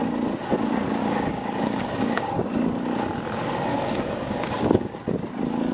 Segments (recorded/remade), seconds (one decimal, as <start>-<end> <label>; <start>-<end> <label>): 0.0-1.0 recorded; 1.0-2.2 remade; 2.2-3.7 recorded; 3.7-5.3 remade; 5.3-5.7 recorded